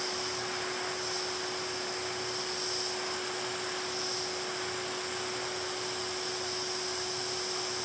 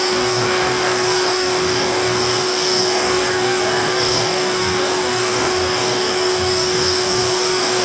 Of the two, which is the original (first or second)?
first